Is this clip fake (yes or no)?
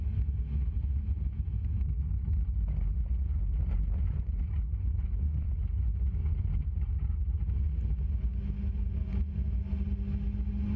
no